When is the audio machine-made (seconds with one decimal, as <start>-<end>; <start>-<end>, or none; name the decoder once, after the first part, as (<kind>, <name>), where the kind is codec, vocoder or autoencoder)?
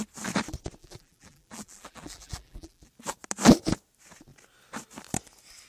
0.8-2.9 (vocoder, BigVGAN v2)